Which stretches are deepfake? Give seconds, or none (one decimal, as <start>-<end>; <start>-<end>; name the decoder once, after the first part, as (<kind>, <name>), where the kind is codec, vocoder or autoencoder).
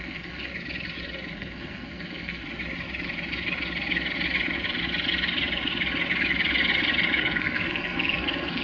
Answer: 0.0-0.5 (codec, SNAC); 1.3-2.4; 7.2-8.6